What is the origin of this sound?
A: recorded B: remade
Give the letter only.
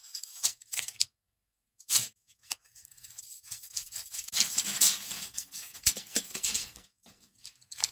B